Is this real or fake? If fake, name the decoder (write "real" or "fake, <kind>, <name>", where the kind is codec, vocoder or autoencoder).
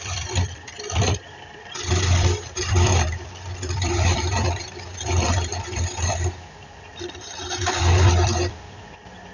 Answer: fake, vocoder, BigVGAN v2